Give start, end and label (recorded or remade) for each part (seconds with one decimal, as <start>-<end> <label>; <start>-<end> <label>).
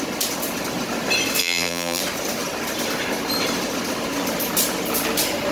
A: 0.0-1.4 recorded; 1.4-2.0 remade; 2.0-5.5 recorded